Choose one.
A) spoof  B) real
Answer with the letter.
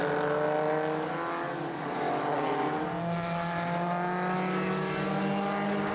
B